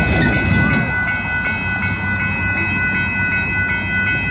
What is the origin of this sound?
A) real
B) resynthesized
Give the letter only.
A